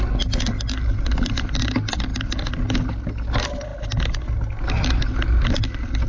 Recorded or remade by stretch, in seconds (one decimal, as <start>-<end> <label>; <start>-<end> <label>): 0.0-6.1 recorded